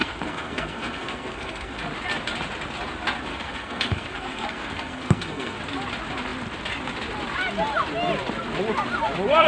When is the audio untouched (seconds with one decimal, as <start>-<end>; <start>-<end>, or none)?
1.8-3.3; 5.6-9.5